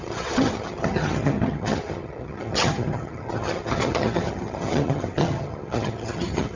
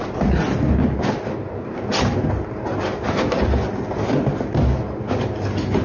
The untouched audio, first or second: second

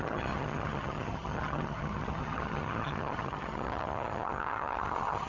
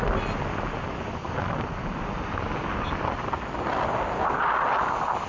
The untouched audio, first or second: second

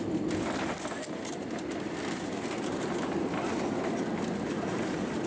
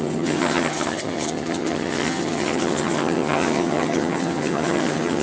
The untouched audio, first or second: first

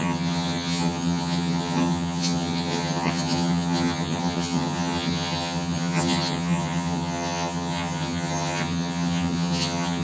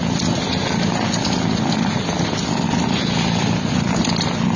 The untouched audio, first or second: second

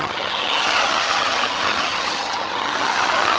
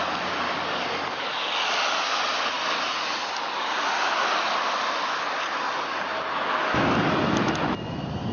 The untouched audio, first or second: second